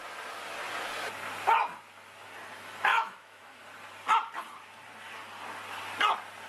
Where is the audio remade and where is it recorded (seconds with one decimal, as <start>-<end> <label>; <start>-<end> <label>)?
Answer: 0.0-2.9 recorded; 2.9-3.6 remade; 3.6-6.5 recorded